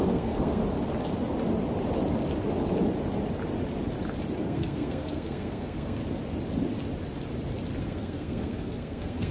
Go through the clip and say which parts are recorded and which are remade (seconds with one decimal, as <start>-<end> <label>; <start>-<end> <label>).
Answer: 0.0-0.6 remade; 0.6-4.4 recorded; 4.4-6.0 remade; 6.0-7.8 recorded; 7.8-9.3 remade